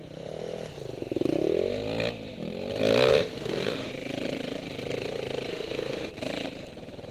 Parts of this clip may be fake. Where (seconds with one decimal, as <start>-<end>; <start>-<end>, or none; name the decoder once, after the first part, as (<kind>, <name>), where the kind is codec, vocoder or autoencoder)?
3.1-3.9 (autoencoder, DAC-VAE); 5.5-6.1